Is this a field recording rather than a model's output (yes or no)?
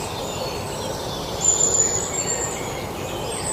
yes